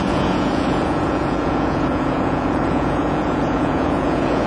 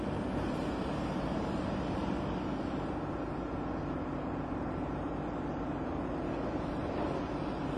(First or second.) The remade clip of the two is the first